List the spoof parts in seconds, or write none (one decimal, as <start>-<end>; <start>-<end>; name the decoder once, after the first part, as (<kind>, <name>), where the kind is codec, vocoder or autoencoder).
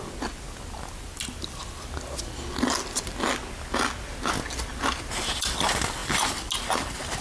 none